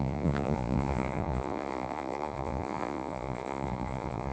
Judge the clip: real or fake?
fake